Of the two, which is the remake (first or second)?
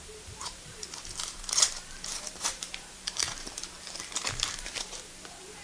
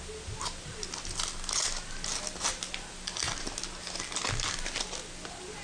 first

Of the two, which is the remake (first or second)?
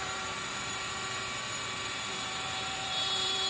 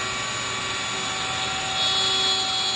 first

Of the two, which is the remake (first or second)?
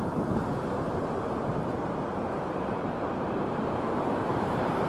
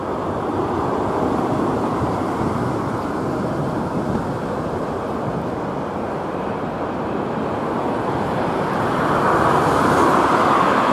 first